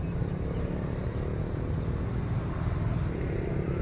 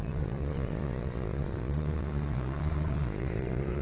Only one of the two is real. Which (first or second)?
first